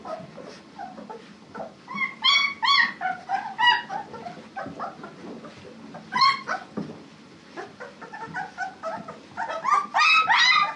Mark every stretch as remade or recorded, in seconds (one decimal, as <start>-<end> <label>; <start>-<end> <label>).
0.0-6.1 recorded; 6.1-6.7 remade; 6.7-10.8 recorded